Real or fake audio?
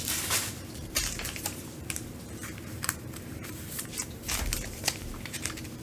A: fake